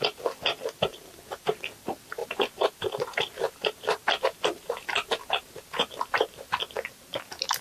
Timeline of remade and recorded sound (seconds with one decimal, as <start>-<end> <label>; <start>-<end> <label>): 0.0-0.9 recorded; 0.9-1.6 remade; 1.6-2.2 recorded; 2.2-6.5 remade; 6.5-7.6 recorded